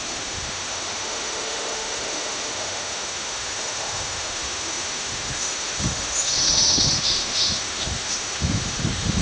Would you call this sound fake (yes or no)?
yes